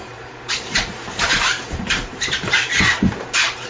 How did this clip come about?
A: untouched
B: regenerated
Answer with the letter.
B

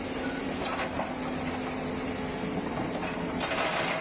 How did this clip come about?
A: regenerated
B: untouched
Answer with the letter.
B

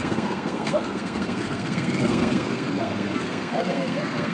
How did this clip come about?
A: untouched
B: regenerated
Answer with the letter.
B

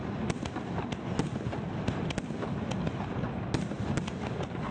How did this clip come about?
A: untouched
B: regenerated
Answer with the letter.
A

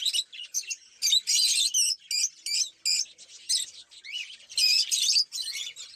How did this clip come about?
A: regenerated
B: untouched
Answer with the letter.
B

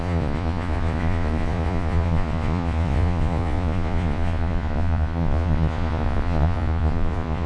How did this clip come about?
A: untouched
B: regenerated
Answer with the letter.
B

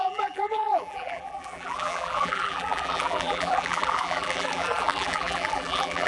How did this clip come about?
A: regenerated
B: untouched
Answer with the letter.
A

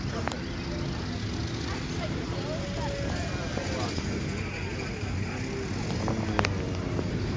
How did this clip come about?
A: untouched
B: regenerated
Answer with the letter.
A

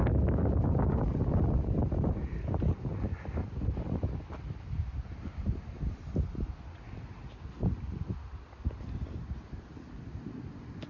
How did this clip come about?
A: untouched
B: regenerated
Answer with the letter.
A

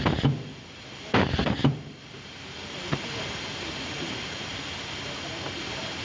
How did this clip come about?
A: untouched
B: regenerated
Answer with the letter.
A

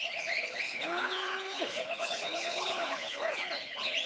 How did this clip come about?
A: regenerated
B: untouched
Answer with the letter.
A